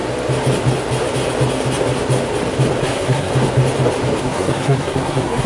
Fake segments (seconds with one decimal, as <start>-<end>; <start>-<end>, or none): 2.8-3.3; 4.2-5.5